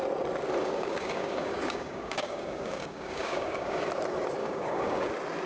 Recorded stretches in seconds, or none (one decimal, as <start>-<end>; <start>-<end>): 0.0-0.6; 3.9-4.4; 5.1-5.5